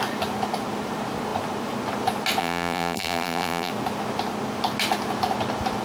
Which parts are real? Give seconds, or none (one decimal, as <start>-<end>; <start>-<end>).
0.0-2.4; 3.7-5.8